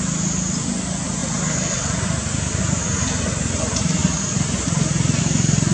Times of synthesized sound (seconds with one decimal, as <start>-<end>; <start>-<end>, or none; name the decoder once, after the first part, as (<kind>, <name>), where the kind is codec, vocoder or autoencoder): none